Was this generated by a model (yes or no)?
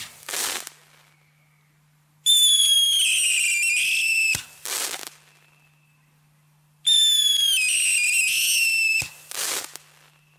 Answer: no